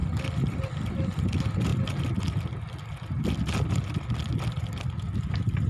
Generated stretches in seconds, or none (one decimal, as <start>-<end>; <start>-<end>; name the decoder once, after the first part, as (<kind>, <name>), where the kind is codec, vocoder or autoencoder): none